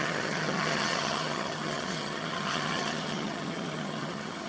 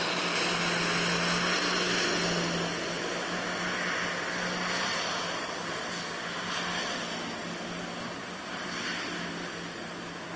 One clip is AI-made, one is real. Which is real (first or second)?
second